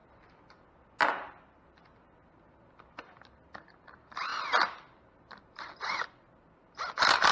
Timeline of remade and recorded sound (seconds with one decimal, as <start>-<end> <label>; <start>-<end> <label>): 0.0-7.3 recorded